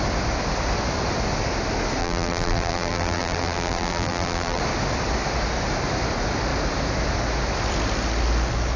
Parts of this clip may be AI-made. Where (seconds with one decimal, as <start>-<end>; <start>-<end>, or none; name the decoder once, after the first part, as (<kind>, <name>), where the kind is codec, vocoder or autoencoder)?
2.0-4.6 (vocoder, BigVGAN v2)